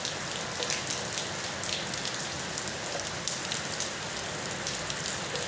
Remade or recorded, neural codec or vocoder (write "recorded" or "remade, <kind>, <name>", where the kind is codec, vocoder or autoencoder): recorded